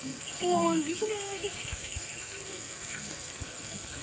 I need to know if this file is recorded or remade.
remade